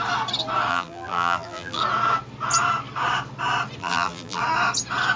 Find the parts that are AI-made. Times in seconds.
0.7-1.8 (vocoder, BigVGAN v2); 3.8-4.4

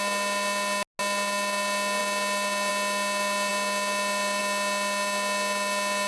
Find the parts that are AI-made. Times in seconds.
none

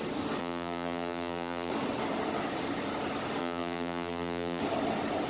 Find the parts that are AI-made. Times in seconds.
0.4-1.7 (vocoder, BigVGAN v2); 3.4-4.6

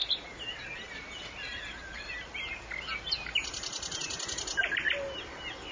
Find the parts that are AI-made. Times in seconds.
1.5-2.1 (vocoder, BigVGAN v2)

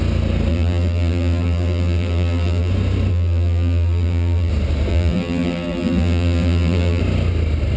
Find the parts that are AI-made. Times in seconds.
0.5-2.7 (vocoder, BigVGAN v2); 3.1-4.5; 4.9-7.0

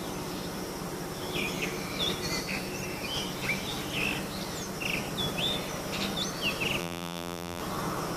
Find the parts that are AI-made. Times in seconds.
6.8-7.6 (vocoder, BigVGAN v2)

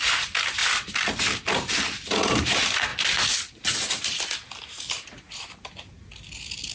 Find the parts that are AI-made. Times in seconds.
0.6-1.8 (vocoder, BigVGAN v2)